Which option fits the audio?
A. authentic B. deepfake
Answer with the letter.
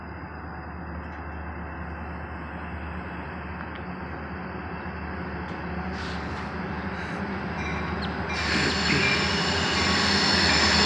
A